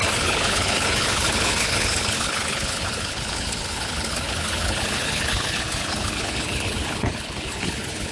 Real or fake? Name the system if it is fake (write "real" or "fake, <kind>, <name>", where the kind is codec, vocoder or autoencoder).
fake, codec, HILCodec